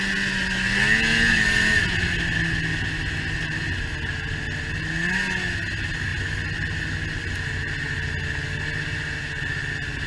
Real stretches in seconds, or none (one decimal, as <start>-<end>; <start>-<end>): 0.0-10.1